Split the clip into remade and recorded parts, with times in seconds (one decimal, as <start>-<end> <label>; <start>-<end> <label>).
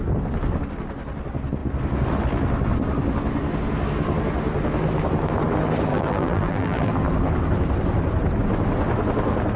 0.0-5.9 recorded; 5.9-6.9 remade; 6.9-9.6 recorded